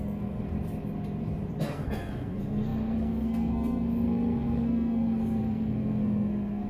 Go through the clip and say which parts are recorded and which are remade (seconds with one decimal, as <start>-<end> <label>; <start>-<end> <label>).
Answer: 0.0-0.5 remade; 0.5-1.6 recorded; 1.6-6.7 remade